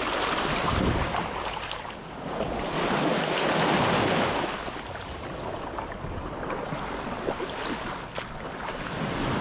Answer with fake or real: real